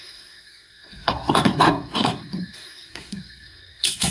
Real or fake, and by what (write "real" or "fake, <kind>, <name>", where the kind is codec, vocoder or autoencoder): fake, codec, SNAC